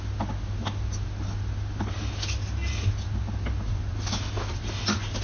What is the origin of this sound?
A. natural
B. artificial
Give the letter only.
A